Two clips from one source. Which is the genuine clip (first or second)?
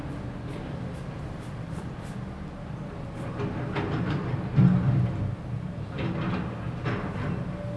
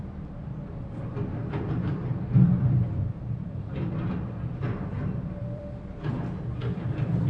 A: first